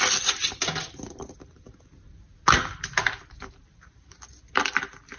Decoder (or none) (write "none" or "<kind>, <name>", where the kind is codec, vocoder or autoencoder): none